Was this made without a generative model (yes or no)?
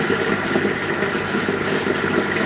yes